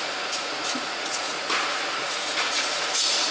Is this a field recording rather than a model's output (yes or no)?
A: no